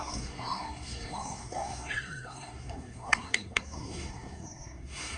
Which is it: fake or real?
fake